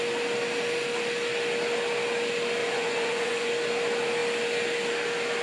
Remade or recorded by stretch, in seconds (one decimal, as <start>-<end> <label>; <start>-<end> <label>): 0.0-2.6 recorded; 2.6-3.5 remade; 3.5-5.4 recorded